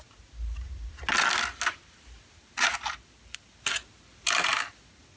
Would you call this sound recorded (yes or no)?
yes